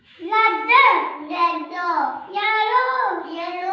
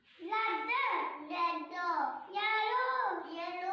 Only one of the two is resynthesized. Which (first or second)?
first